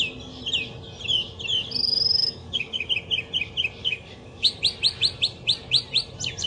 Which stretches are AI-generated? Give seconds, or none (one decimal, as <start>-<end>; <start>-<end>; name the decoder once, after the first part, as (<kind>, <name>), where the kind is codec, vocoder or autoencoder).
2.2-2.9 (codec, DAC); 3.8-4.5